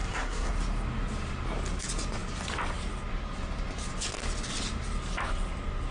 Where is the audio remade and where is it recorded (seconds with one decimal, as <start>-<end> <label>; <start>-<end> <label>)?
0.0-0.5 remade; 0.5-5.9 recorded